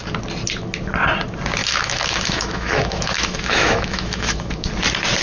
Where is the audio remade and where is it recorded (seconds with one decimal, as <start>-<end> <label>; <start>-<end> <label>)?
0.0-1.6 recorded; 1.6-4.7 remade; 4.7-5.2 recorded